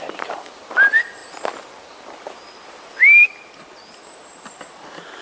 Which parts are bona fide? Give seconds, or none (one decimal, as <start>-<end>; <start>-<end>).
0.0-1.2; 4.0-5.2